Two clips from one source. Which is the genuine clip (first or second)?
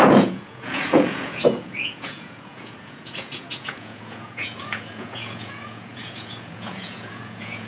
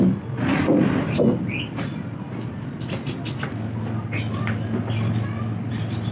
second